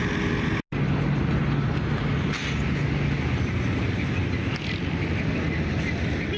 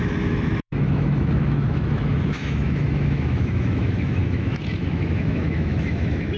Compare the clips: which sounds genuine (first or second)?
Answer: first